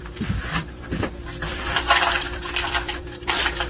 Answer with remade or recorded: remade